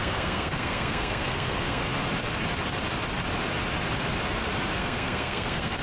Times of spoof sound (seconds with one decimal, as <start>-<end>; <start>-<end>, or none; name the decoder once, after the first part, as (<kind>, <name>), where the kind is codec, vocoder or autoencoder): 0.0-1.8 (codec, SNAC); 4.8-5.8